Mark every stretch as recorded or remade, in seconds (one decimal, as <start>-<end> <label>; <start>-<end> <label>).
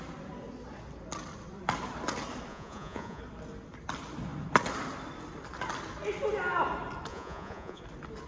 0.0-2.5 recorded; 2.5-3.2 remade; 3.2-7.1 recorded; 7.1-7.8 remade; 7.8-8.3 recorded